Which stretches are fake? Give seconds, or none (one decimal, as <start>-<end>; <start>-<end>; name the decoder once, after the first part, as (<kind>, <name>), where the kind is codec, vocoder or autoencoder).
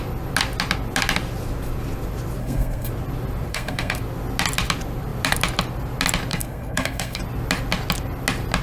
2.4-2.9 (codec, SNAC); 3.5-4.0; 6.3-7.2